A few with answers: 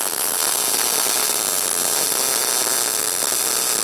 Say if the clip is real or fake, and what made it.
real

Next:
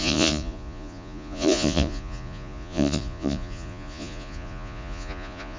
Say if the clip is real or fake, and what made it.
fake, vocoder, Vocos